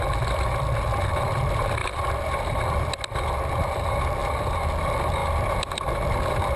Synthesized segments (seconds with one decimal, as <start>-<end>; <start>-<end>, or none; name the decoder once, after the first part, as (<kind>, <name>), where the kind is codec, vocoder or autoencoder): none